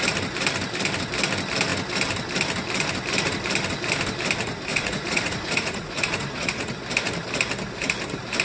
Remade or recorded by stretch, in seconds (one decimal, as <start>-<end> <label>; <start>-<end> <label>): 0.0-4.7 recorded; 4.7-6.7 remade; 6.7-8.4 recorded